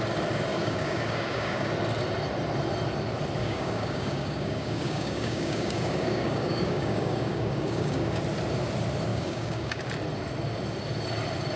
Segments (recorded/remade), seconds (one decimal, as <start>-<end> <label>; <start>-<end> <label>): 0.0-0.5 recorded; 0.5-1.7 remade; 1.7-3.4 recorded; 3.4-8.2 remade; 8.2-9.1 recorded; 9.1-9.9 remade; 9.9-11.6 recorded